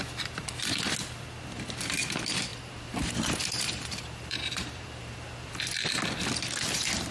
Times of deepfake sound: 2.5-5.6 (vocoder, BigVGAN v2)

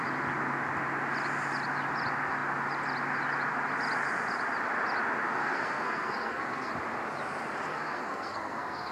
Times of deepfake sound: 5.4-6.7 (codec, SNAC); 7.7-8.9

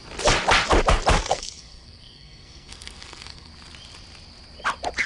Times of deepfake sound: 1.2-3.5 (codec, SNAC)

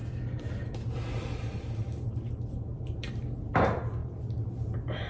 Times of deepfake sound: none

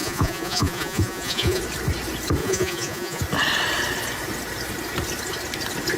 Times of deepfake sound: 0.0-1.6 (vocoder, Vocos); 2.4-3.2

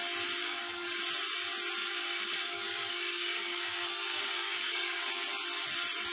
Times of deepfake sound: 0.4-1.0 (codec, DAC); 1.8-5.0

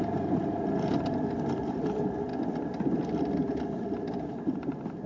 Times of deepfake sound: 0.0-2.3 (vocoder, BigVGAN v2)